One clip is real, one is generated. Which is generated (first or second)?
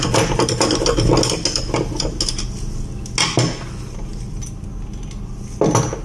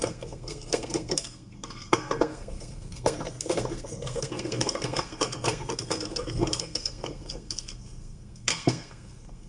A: second